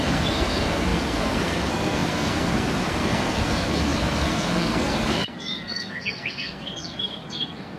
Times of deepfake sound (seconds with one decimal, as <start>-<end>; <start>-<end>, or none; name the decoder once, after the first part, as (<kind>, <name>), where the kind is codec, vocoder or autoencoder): 0.0-7.8 (codec, SNAC)